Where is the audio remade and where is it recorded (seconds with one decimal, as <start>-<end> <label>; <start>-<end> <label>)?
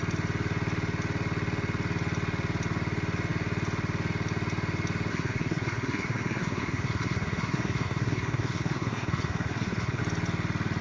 0.0-5.1 recorded; 5.1-10.0 remade; 10.0-10.8 recorded